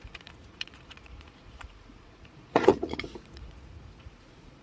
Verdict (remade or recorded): remade